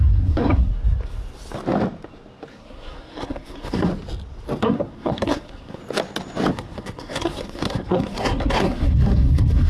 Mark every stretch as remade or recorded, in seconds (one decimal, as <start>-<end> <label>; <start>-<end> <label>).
0.0-0.7 remade; 0.7-2.5 recorded; 2.5-3.9 remade; 3.9-4.6 recorded; 4.6-5.8 remade; 5.8-6.5 recorded; 6.5-9.7 remade